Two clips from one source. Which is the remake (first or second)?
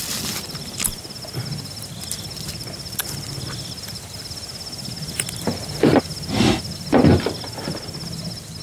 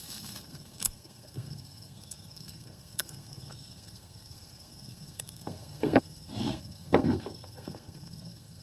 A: second